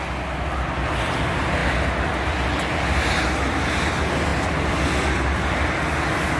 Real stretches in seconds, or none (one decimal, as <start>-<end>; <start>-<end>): 0.0-6.4